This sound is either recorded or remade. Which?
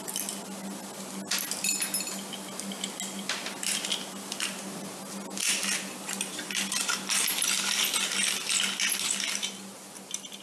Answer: recorded